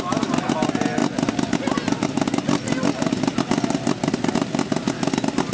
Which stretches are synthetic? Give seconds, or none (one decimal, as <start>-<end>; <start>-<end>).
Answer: none